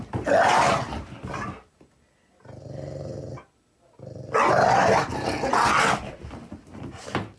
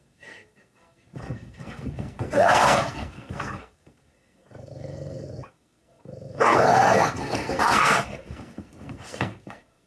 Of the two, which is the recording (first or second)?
first